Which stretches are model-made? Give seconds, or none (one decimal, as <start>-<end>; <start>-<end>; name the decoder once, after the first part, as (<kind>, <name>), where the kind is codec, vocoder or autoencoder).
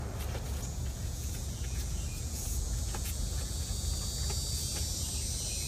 0.5-3.9 (vocoder, Vocos)